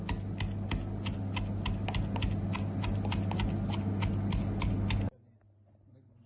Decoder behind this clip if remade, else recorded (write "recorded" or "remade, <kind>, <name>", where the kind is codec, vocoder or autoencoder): recorded